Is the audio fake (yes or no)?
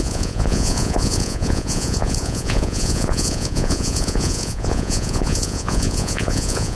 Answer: yes